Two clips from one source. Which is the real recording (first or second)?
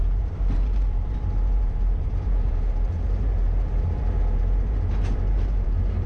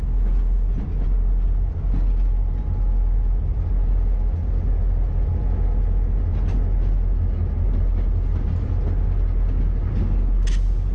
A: second